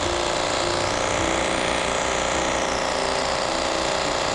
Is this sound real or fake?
real